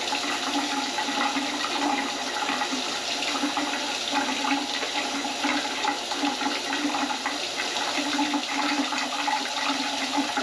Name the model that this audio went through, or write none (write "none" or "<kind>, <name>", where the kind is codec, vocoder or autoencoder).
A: none